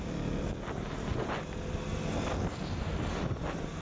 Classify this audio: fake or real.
real